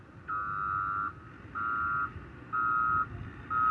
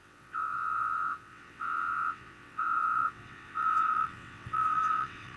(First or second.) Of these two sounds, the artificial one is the second